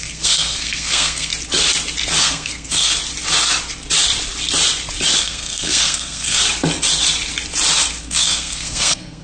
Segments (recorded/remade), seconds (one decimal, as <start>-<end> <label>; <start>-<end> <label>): 0.0-1.3 remade; 1.3-2.2 recorded; 2.2-2.9 remade; 2.9-5.2 recorded; 5.2-6.4 remade; 6.4-8.0 recorded; 8.0-9.2 remade